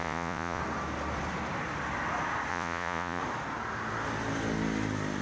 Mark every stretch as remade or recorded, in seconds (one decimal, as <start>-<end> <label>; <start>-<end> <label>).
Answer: 0.0-0.6 remade; 0.6-2.5 recorded; 2.5-3.2 remade; 3.2-5.2 recorded